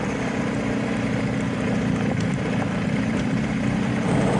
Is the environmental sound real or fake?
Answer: real